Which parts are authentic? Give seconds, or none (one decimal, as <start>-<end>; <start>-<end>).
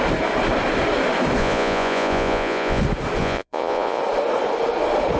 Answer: 0.0-1.4; 2.8-3.2; 4.0-5.2